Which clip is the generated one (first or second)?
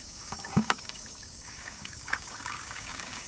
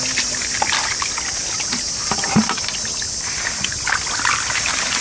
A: first